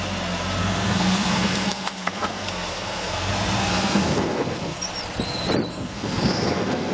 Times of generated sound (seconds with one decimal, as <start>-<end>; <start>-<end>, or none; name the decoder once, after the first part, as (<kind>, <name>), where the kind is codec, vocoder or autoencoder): 0.6-3.3 (codec, SNAC); 3.7-4.8; 5.7-6.9